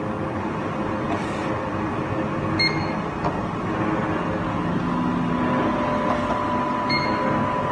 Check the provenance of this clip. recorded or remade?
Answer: recorded